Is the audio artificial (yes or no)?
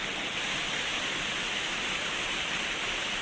no